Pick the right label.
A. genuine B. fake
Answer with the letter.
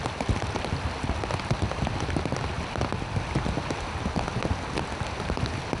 A